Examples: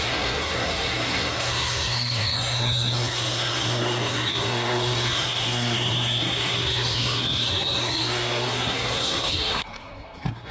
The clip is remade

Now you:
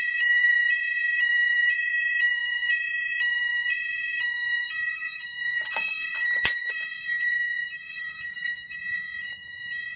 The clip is remade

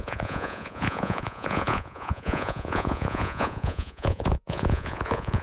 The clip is remade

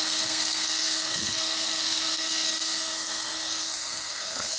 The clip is remade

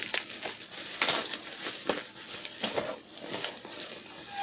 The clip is recorded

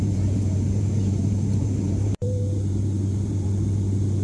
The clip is remade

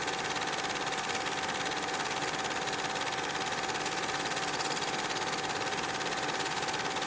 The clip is recorded